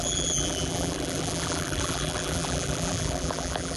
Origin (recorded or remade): remade